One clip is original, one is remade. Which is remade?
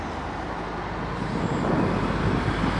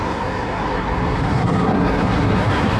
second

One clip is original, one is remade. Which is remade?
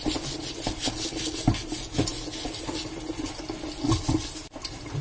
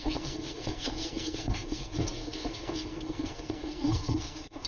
second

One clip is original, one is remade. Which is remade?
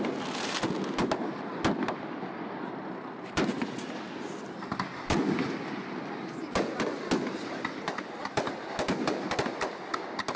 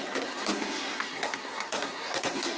second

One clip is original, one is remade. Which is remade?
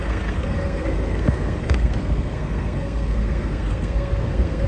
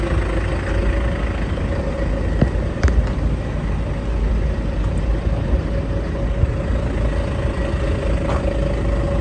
first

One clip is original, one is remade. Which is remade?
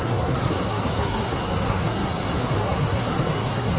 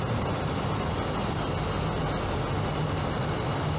first